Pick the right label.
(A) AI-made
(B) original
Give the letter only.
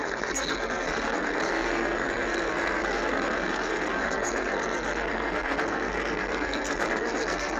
A